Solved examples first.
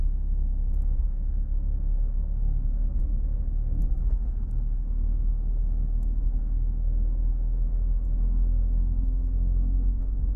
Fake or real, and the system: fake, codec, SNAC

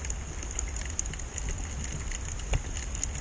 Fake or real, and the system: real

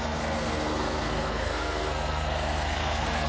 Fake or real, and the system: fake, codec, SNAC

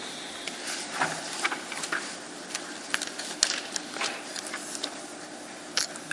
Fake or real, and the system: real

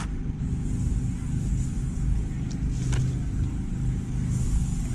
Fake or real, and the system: real